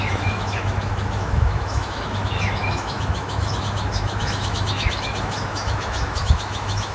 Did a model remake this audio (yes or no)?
yes